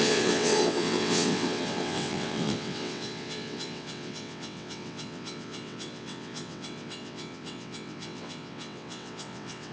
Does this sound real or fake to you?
fake